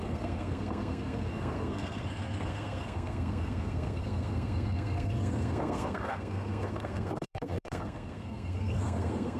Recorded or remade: remade